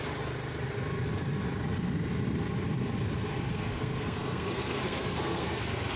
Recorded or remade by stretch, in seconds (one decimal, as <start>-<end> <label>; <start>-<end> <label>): 0.0-3.5 recorded; 3.5-5.6 remade; 5.6-6.0 recorded